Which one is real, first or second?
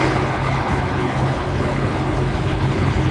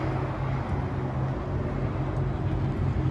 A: second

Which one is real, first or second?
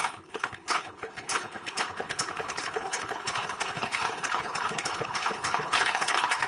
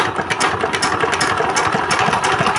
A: second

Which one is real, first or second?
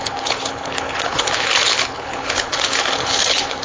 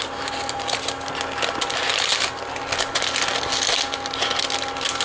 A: second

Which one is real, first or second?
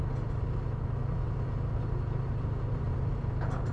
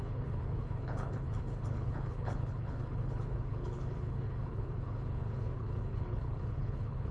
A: first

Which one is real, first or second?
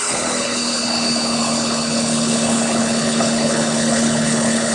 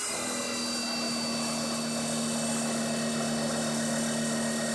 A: second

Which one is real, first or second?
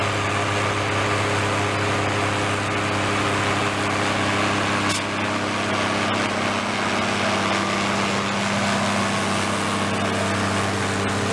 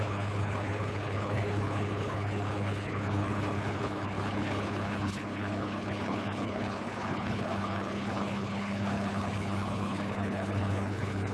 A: first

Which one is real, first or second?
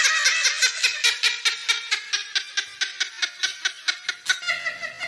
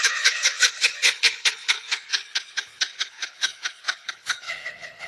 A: first